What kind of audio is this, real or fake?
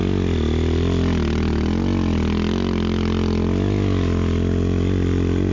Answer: real